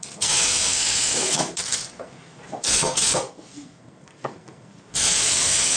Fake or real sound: fake